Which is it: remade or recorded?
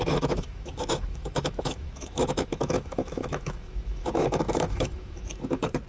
remade